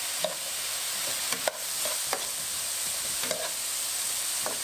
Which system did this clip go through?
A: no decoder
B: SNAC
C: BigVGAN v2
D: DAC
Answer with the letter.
A